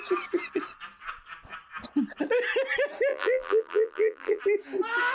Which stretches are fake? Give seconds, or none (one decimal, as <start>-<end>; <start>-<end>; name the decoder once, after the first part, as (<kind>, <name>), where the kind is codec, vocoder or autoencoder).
3.1-4.4 (vocoder, BigVGAN v2)